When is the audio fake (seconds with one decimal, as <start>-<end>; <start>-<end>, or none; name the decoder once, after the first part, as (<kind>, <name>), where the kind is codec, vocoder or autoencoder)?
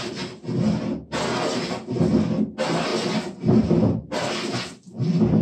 none